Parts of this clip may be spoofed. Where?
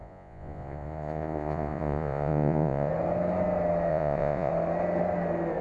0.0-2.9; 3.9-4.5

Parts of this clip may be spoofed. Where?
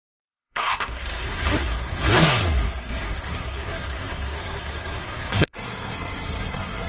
0.0-6.9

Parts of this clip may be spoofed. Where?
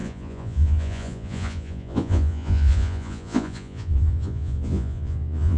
0.0-5.6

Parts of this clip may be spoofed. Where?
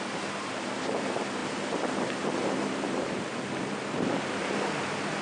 none